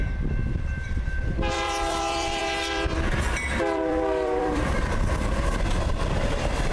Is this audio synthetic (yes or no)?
yes